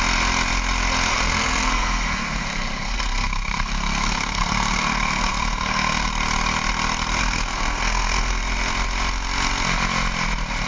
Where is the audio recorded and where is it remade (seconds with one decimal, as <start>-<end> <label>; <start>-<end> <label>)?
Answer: 0.0-1.1 recorded; 1.1-6.1 remade; 6.1-7.2 recorded; 7.2-8.4 remade; 8.4-10.7 recorded